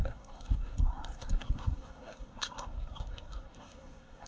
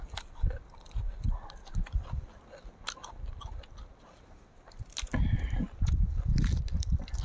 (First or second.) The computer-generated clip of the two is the first